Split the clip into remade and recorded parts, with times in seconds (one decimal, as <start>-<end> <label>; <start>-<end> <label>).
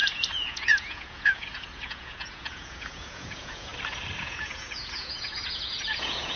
0.0-3.7 remade; 3.7-4.2 recorded; 4.2-6.4 remade